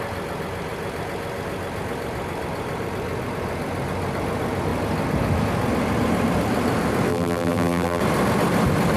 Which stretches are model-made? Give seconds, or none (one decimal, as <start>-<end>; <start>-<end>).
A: 7.1-8.0